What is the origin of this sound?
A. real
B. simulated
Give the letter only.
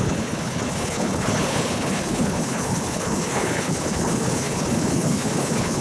B